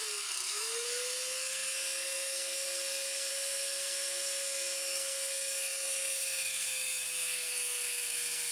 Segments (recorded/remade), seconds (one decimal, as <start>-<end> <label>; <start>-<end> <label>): 0.0-8.5 remade